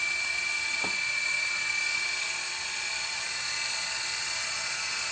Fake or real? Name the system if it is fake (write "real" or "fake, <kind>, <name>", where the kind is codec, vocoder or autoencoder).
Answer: real